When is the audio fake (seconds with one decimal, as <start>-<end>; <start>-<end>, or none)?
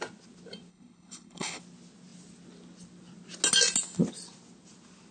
0.7-1.6